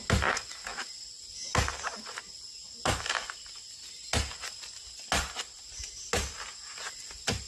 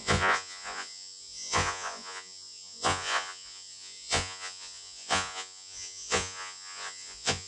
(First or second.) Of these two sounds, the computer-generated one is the second